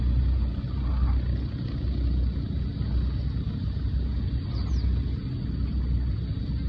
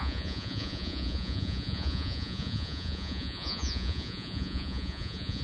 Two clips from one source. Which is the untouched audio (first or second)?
first